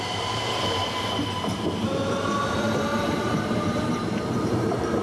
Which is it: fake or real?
fake